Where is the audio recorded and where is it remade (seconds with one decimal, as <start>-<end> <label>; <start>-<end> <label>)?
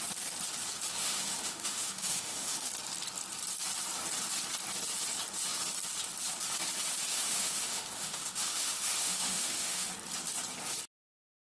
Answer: 0.0-1.0 recorded; 1.0-2.7 remade; 2.7-7.1 recorded; 7.1-9.9 remade; 9.9-11.4 recorded